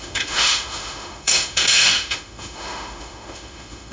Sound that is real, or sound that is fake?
fake